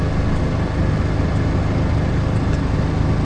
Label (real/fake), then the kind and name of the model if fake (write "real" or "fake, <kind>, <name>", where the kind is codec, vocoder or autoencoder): real